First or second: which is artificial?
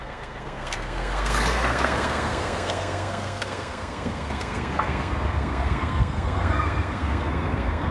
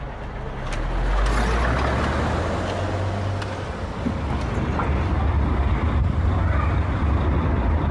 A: first